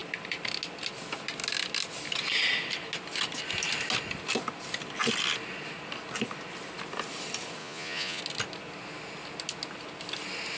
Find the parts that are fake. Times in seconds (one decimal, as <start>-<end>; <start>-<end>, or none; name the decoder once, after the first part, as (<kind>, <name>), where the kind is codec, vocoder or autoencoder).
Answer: 7.6-8.2 (vocoder, Vocos)